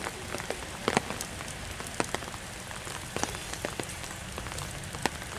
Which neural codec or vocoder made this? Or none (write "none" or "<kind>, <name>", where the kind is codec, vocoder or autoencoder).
none